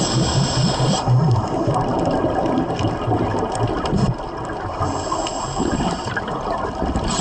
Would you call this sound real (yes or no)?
no